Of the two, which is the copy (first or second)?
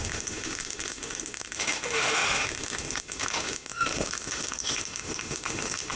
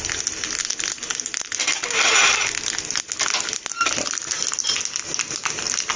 first